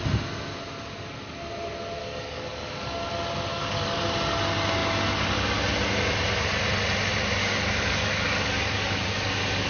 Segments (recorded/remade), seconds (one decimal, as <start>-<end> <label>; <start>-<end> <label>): 0.0-2.0 recorded; 2.0-3.1 remade; 3.1-3.5 recorded; 3.5-4.0 remade; 4.0-7.4 recorded; 7.4-9.7 remade